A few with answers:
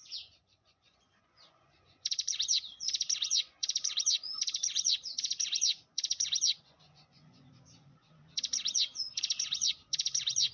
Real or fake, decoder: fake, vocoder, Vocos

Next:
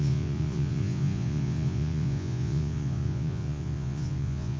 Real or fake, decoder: fake, vocoder, Vocos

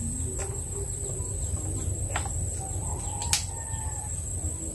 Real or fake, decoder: real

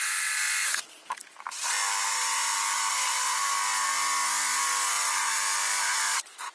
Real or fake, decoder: real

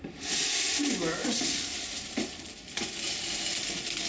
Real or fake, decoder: real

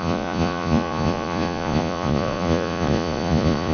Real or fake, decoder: fake, vocoder, Vocos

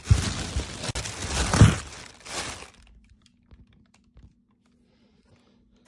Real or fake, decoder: real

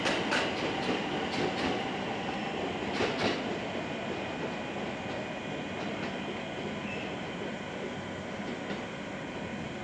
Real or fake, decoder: real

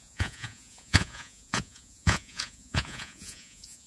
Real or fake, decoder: fake, vocoder, Vocos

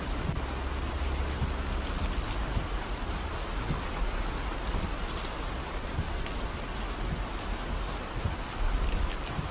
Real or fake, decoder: real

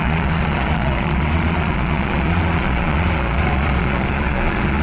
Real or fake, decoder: fake, vocoder, Vocos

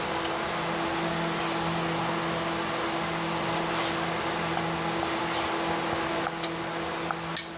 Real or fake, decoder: real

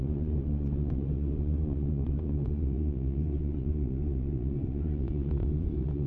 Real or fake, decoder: fake, vocoder, Vocos